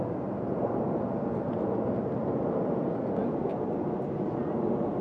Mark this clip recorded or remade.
recorded